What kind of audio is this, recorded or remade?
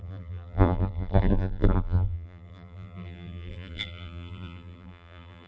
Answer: remade